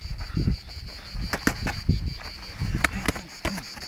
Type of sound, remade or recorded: recorded